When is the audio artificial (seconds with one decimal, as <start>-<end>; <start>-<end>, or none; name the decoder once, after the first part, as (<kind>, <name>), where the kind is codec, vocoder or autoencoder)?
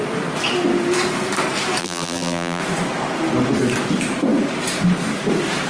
1.8-2.6 (vocoder, BigVGAN v2)